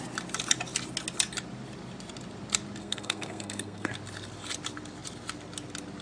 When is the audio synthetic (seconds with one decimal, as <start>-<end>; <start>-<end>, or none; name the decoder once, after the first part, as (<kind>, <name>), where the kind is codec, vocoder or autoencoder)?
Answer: 2.8-3.9 (codec, SNAC)